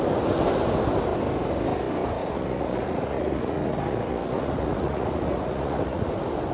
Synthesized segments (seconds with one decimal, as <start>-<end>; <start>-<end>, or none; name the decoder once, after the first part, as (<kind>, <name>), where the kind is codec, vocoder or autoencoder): 2.2-6.1 (vocoder, Vocos)